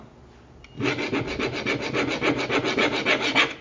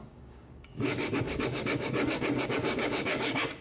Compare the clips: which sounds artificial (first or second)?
second